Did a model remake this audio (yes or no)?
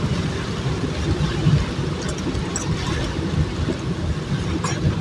no